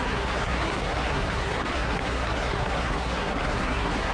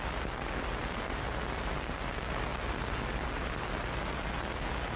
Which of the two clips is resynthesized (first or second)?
first